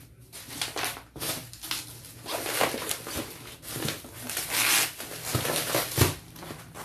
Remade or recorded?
recorded